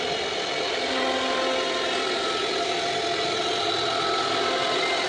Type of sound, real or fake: real